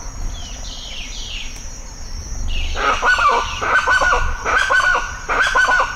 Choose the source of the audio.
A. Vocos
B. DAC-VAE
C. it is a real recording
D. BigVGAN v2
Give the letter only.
C